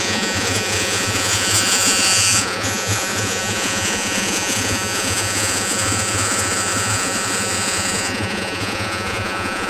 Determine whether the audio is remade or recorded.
remade